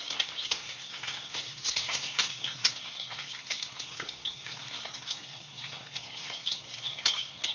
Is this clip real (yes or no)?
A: no